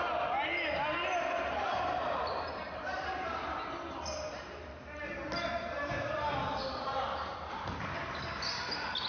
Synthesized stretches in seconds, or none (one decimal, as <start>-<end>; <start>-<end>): 1.6-3.3